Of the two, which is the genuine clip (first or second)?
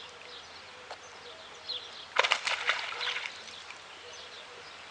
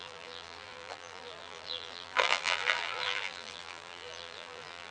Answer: first